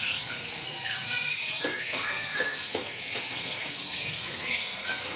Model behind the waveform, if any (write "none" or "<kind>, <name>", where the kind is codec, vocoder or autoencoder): codec, SNAC